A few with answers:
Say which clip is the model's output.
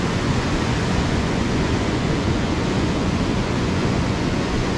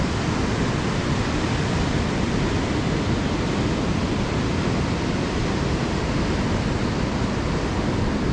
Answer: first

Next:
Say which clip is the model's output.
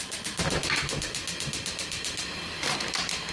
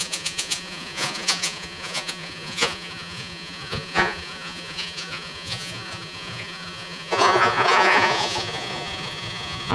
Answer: second